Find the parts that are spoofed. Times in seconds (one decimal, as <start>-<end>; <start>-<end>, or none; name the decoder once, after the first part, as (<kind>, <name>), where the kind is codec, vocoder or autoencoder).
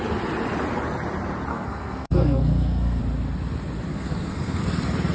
1.5-3.0 (codec, SNAC); 3.9-4.6